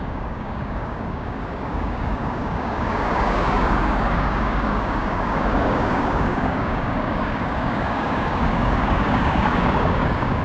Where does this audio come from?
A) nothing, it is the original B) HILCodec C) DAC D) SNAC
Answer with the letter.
C